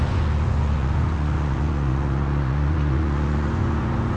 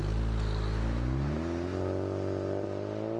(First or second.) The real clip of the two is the second